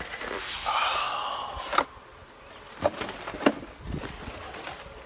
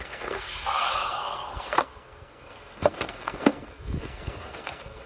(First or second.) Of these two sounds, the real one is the first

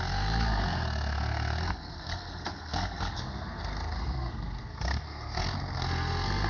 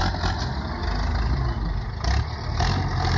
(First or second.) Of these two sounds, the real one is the second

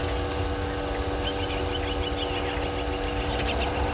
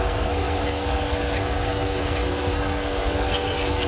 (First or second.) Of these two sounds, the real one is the first